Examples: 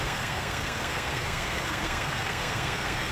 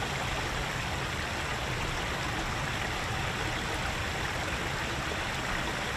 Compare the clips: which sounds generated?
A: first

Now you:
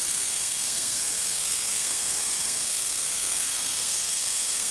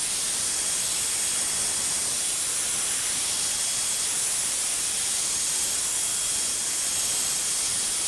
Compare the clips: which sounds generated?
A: first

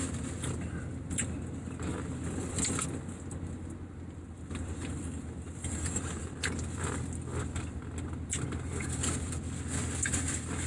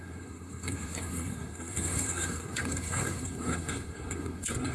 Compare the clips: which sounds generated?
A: second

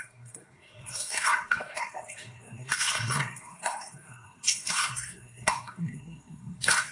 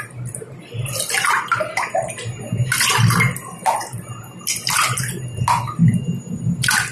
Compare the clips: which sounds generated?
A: first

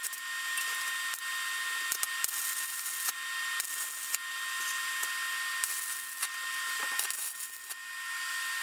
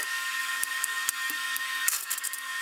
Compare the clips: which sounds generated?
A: second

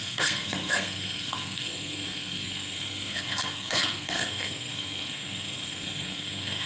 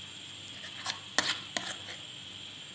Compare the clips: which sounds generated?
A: first